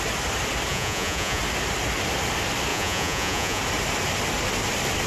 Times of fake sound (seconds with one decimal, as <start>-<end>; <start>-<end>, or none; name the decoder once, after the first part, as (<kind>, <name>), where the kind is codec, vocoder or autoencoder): 0.7-1.4 (vocoder, Vocos); 2.7-3.6